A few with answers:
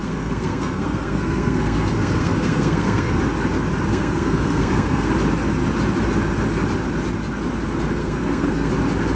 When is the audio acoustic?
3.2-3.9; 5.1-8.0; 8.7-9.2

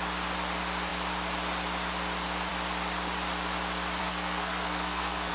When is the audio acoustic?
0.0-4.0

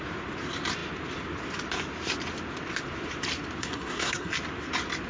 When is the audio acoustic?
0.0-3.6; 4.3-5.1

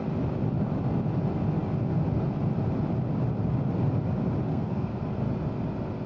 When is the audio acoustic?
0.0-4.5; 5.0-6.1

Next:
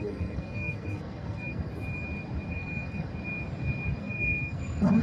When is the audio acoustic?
1.7-2.5; 3.1-4.0

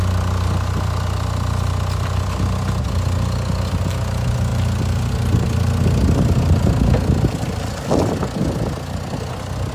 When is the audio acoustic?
0.0-9.7

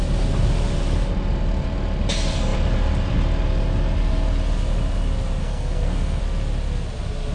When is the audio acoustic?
0.0-5.4; 6.2-7.3